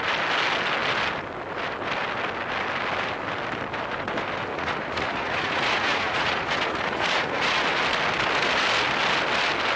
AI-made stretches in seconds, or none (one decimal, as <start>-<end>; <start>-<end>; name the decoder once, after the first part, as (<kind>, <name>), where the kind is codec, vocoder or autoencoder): 4.5-7.6 (vocoder, Vocos)